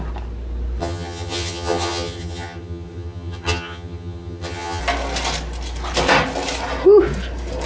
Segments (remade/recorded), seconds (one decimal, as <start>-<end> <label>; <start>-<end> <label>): 0.0-0.8 recorded; 0.8-4.8 remade; 4.8-7.7 recorded